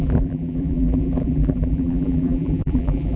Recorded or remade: remade